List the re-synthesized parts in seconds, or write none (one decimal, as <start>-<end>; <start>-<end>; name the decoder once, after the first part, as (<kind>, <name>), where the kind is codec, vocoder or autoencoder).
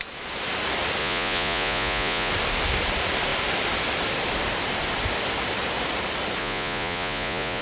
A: 1.0-2.3 (vocoder, Vocos); 6.4-7.6